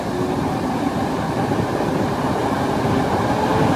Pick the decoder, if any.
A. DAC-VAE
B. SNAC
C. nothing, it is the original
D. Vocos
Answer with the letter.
C